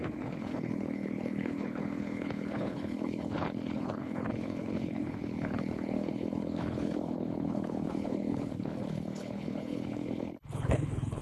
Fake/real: fake